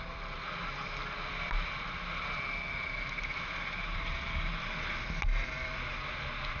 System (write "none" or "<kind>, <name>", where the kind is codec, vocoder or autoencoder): none